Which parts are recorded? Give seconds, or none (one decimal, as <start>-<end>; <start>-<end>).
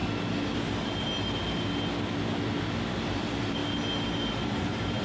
0.0-3.0; 3.6-4.3